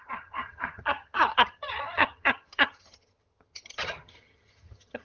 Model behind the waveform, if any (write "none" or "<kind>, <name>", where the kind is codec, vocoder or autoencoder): vocoder, HiFi-GAN